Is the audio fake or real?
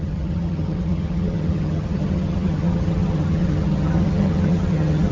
fake